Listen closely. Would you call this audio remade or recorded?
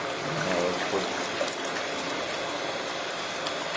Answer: recorded